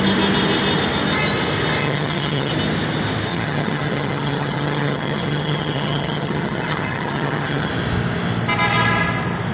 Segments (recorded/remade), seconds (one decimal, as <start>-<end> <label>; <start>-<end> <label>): 0.0-1.8 recorded; 1.8-2.5 remade; 2.5-3.3 recorded; 3.3-7.7 remade; 7.7-9.5 recorded